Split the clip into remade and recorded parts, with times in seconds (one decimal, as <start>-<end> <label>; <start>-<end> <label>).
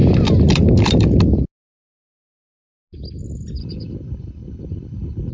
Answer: 0.0-3.6 recorded; 3.6-5.3 remade